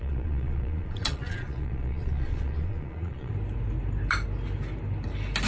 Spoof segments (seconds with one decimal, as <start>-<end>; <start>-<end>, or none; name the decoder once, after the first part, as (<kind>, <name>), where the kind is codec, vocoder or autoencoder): 0.0-3.3 (vocoder, Vocos)